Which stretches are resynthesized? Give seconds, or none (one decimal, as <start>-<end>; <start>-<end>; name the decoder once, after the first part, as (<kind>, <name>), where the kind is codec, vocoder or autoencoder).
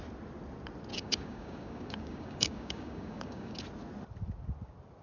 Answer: 0.9-3.6 (codec, DAC)